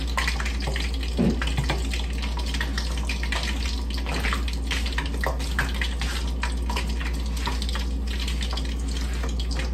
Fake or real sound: real